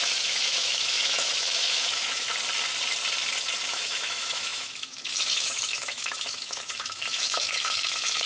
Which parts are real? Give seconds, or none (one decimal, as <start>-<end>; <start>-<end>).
2.3-3.7